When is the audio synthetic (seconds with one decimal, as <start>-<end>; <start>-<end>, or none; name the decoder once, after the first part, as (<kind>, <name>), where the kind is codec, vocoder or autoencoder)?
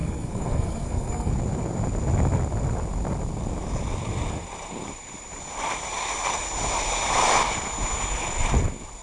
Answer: 0.0-1.3 (codec, SNAC)